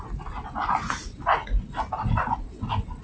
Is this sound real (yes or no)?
yes